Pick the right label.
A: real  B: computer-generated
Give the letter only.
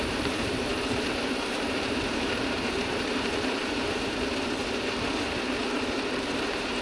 B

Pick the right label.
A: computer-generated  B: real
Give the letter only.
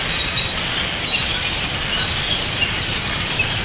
A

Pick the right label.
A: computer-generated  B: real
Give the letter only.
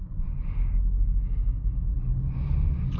B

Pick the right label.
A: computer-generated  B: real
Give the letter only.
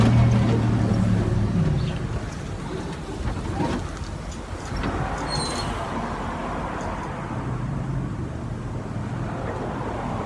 B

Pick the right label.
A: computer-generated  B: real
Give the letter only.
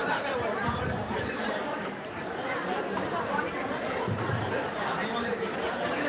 A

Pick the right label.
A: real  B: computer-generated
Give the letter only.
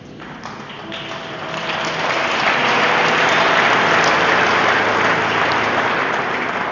A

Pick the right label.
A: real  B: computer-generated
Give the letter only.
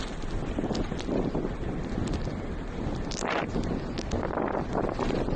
A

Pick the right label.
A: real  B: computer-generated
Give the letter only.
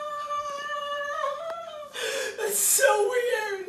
B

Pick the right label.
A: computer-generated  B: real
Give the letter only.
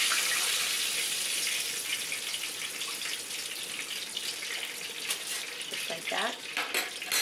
B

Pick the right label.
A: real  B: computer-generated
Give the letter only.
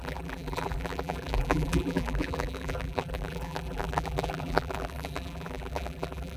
B